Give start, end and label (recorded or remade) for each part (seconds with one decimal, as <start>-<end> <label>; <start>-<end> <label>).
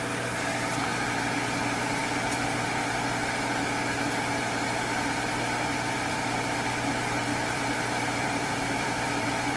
0.0-7.3 recorded; 7.3-9.6 remade